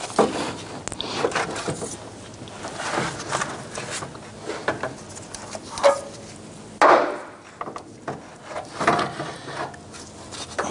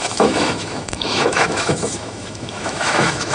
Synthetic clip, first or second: second